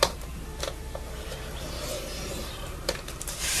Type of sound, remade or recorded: remade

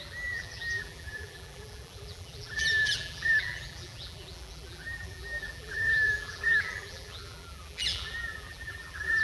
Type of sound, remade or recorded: remade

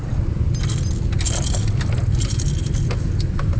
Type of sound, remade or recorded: recorded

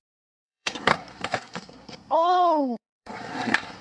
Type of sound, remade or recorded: remade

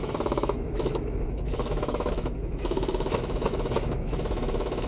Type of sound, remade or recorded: remade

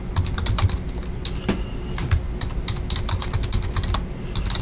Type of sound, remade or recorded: recorded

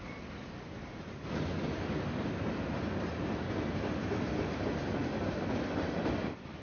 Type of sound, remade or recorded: recorded